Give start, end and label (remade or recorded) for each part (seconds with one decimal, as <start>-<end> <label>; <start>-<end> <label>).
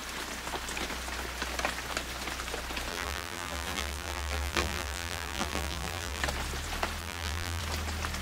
0.0-2.9 recorded; 2.9-6.2 remade; 6.2-7.0 recorded; 7.0-7.6 remade; 7.6-8.2 recorded